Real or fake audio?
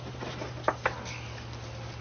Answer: real